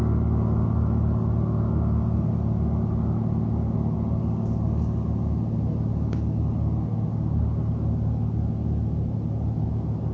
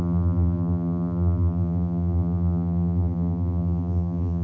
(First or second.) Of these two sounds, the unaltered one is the first